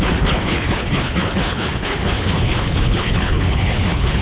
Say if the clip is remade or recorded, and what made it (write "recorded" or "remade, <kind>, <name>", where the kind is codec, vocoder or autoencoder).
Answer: remade, codec, HILCodec